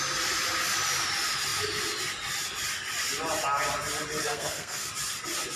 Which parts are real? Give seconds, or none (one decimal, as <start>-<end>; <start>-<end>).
0.0-4.2; 4.9-5.6